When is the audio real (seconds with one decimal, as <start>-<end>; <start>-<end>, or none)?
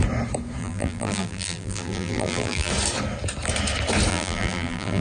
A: 0.0-0.6; 2.7-4.1